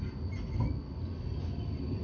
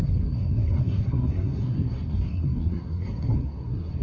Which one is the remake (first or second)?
second